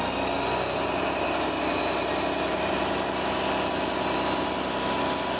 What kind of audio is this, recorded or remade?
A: recorded